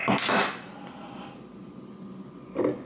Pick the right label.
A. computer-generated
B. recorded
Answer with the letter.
B